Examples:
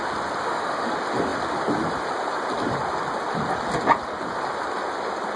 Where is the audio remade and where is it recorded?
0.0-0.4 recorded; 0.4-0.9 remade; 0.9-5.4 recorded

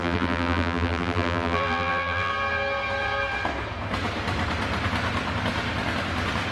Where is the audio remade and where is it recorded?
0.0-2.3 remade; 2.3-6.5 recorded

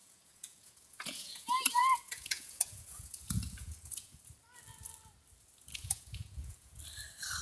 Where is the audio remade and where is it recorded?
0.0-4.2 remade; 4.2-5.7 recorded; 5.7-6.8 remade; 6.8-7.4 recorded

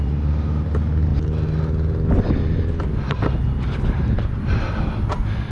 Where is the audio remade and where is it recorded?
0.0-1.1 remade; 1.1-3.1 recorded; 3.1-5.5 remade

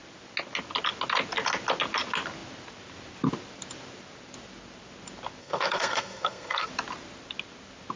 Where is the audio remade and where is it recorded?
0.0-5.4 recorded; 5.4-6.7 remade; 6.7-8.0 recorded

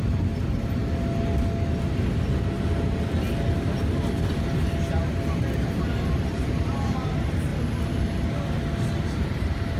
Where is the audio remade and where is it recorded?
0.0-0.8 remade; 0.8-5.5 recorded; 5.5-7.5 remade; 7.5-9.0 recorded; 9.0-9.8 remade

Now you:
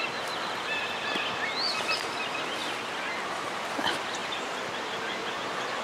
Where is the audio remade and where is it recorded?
0.0-5.8 recorded

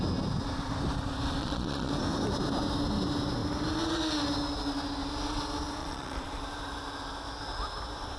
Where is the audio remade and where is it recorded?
0.0-1.4 recorded; 1.4-1.9 remade; 1.9-5.8 recorded; 5.8-6.4 remade; 6.4-8.2 recorded